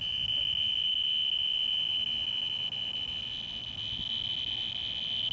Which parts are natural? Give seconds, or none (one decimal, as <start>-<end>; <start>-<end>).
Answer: 0.0-5.3